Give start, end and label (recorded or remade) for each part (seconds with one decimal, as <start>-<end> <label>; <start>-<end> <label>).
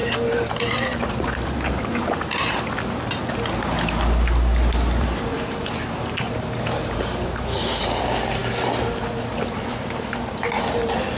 0.0-2.6 remade; 2.6-5.3 recorded; 5.3-8.0 remade; 8.0-11.2 recorded